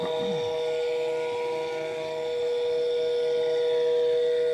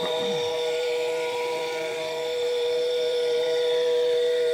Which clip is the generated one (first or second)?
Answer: second